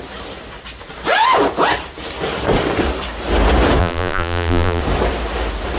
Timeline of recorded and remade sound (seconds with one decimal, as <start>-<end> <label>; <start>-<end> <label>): 0.0-3.8 recorded; 3.8-4.8 remade; 4.8-5.8 recorded